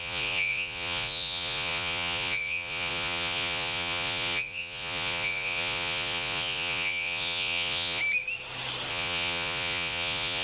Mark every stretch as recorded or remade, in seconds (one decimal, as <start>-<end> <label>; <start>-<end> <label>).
0.0-8.0 remade; 8.0-8.9 recorded; 8.9-10.4 remade